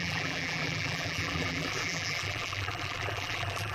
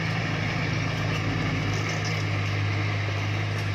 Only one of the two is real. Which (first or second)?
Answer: second